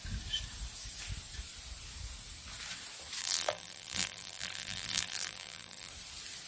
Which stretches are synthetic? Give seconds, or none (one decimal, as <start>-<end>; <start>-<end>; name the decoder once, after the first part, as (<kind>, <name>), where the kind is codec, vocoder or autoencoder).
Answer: 3.2-5.9 (vocoder, BigVGAN v2)